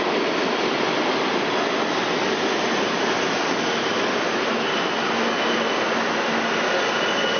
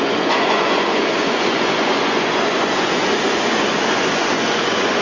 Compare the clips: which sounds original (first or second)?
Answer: first